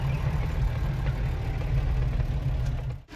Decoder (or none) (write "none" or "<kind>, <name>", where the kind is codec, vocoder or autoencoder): none